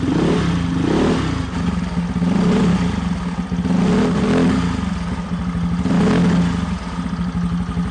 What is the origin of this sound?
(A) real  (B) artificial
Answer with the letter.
A